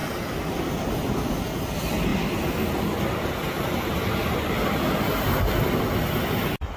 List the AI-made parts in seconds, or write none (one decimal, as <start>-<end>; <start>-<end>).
none